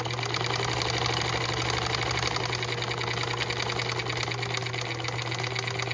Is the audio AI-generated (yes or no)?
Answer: no